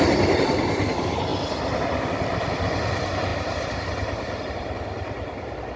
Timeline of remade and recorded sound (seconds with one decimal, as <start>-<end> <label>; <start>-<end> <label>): 0.0-5.8 remade